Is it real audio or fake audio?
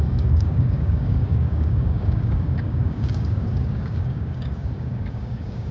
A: fake